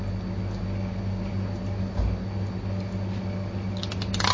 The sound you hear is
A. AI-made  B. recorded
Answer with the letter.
B